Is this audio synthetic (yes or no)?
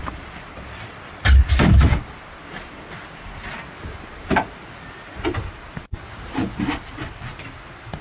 no